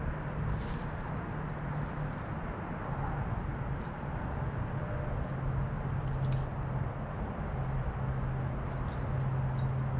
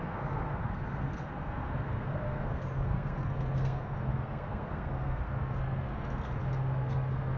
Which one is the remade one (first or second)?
second